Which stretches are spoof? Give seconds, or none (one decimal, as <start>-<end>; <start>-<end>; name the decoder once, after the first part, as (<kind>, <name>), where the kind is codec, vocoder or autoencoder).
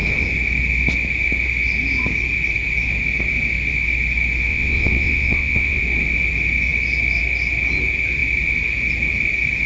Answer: 4.5-5.8 (vocoder, WaveNeXt)